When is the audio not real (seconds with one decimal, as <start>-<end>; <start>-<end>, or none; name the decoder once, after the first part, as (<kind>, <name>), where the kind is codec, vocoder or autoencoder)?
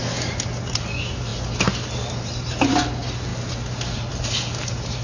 none